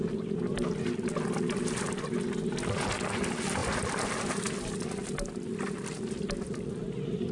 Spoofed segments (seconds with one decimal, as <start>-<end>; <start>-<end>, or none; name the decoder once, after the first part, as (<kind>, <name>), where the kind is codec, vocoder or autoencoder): none